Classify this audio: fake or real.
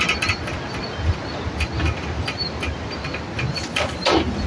real